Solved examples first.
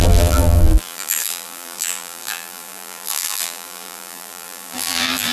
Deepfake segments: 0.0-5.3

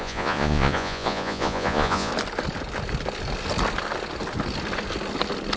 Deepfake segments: 0.0-2.1

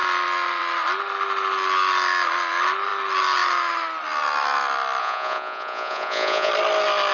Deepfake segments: 5.0-6.5

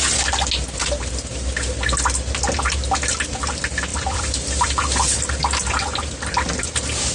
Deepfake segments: 3.9-5.3

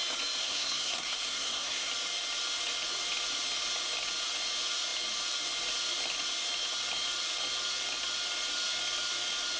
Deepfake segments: 0.4-1.9

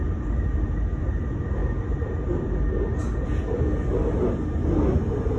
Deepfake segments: none